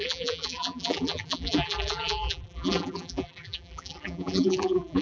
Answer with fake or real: fake